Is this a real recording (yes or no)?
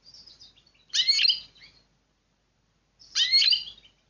yes